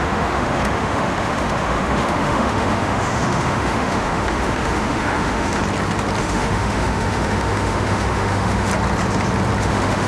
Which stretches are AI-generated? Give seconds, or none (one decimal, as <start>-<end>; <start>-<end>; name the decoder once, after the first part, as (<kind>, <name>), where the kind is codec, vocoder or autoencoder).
0.0-5.6 (autoencoder, DAC-VAE); 6.2-8.7; 9.6-10.1

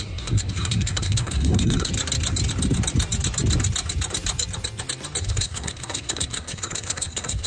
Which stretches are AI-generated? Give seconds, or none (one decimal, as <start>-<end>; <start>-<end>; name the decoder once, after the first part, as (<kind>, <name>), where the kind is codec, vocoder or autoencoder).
0.0-1.9 (codec, SNAC); 5.2-7.5